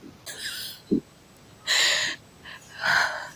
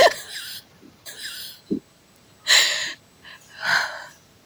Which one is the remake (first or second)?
second